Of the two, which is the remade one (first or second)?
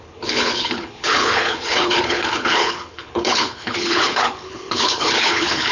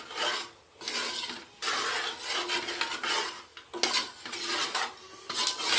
first